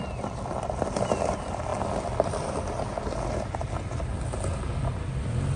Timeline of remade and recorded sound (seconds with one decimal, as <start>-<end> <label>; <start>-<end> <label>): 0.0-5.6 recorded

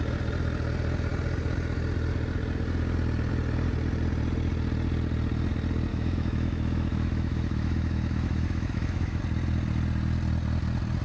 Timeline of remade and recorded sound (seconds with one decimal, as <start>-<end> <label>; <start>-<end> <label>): 0.0-5.9 recorded; 5.9-9.2 remade; 9.2-11.0 recorded

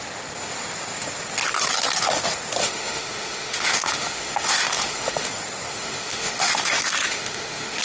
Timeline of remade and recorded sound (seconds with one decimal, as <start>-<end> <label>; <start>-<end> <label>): 0.0-2.6 recorded; 2.6-5.3 remade; 5.3-5.7 recorded; 5.7-7.8 remade